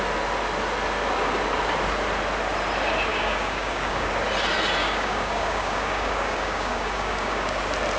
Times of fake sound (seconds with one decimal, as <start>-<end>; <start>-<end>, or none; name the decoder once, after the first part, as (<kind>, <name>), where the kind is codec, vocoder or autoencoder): 3.1-4.1 (codec, DAC); 4.8-7.6